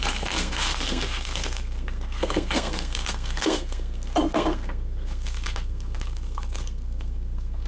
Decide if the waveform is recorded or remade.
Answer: remade